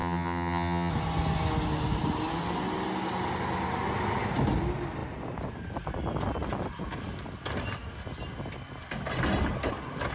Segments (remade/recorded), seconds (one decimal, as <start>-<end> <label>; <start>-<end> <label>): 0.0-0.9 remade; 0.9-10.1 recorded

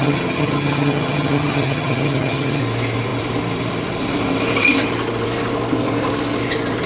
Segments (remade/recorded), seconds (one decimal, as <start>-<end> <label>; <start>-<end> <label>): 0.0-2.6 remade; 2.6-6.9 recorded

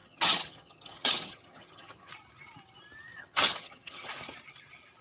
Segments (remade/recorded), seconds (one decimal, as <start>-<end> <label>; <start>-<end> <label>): 0.0-2.1 remade; 2.1-3.2 recorded; 3.2-4.1 remade; 4.1-5.0 recorded